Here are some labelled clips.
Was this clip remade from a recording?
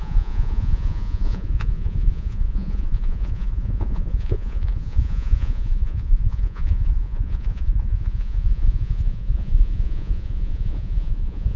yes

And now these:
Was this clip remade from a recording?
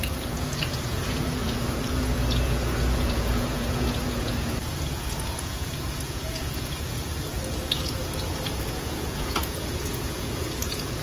yes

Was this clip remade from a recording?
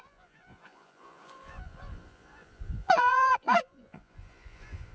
yes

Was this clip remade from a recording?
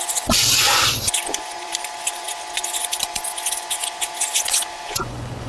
yes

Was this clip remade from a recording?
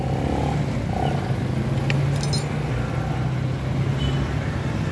no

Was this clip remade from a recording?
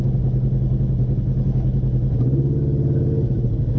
no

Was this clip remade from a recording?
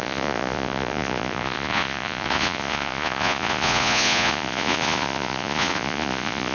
yes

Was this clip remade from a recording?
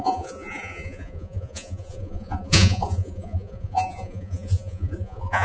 yes